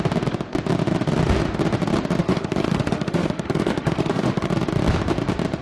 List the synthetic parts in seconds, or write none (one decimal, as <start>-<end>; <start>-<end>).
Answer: 2.2-4.5